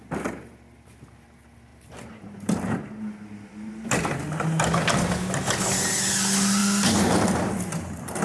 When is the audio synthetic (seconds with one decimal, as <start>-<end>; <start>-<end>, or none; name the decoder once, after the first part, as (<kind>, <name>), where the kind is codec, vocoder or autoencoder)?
1.7-3.7 (vocoder, BigVGAN v2)